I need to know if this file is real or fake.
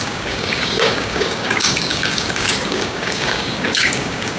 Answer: fake